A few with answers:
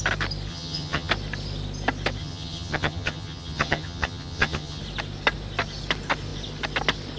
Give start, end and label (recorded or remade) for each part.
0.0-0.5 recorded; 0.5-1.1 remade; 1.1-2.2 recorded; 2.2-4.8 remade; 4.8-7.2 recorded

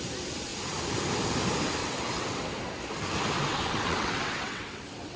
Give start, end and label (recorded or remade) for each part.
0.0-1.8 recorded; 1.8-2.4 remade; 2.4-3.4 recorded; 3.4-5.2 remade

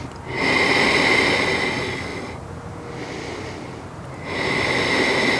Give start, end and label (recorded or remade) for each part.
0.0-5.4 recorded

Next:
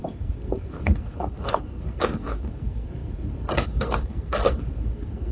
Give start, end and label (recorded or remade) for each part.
0.0-5.3 remade

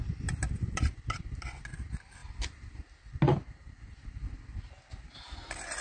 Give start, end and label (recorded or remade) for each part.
0.0-5.8 recorded